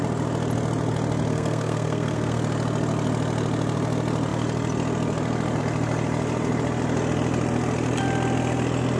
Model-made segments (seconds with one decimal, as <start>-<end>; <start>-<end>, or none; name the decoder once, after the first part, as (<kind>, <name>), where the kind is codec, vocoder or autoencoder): 1.3-2.4 (codec, SNAC)